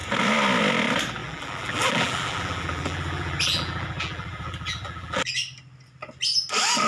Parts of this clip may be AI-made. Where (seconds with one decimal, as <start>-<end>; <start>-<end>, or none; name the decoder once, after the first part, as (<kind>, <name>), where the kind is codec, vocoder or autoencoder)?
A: 1.2-5.3 (vocoder, BigVGAN v2)